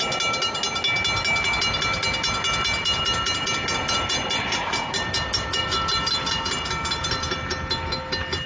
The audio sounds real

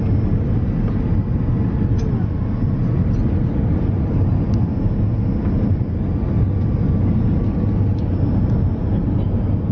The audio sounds real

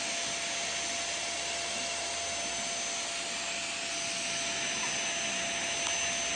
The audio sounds real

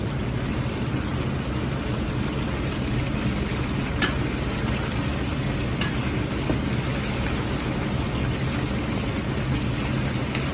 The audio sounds real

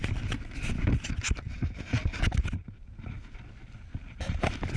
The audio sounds real